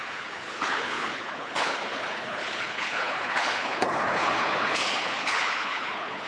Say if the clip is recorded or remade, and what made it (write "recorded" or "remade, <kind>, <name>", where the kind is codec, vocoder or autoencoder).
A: remade, codec, HILCodec